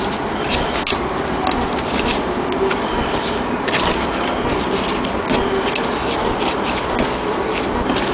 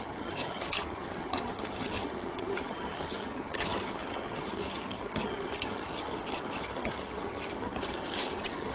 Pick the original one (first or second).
first